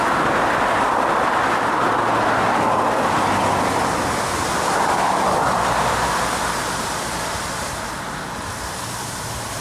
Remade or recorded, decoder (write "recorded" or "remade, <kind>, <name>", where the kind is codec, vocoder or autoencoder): recorded